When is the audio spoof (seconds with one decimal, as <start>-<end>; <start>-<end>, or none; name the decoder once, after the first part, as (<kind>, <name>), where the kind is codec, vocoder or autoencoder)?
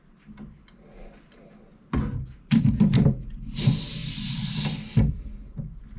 none